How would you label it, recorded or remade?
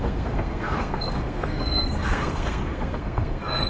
remade